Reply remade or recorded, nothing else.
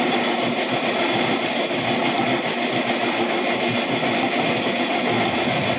recorded